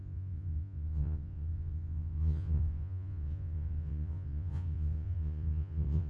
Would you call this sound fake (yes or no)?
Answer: yes